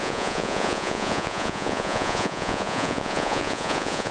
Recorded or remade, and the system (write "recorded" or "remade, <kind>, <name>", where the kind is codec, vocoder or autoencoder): remade, vocoder, Vocos